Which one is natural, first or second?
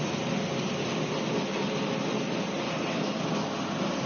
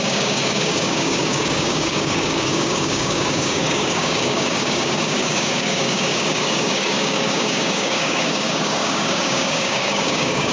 first